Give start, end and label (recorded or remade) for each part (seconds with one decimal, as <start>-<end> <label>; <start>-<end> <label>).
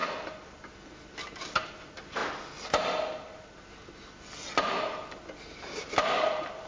0.0-6.7 recorded